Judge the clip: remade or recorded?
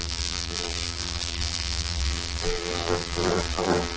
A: remade